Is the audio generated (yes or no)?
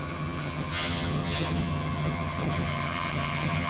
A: yes